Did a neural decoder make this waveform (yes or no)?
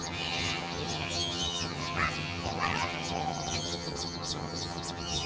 yes